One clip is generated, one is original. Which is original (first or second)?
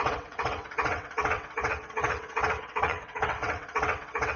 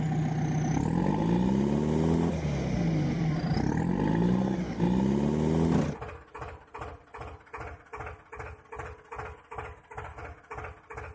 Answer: second